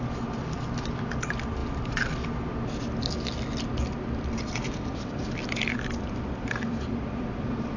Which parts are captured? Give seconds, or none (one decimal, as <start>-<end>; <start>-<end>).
1.6-3.8